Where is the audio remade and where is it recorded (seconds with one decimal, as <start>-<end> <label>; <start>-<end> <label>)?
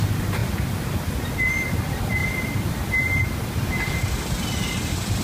0.0-2.2 recorded; 2.2-4.6 remade; 4.6-5.2 recorded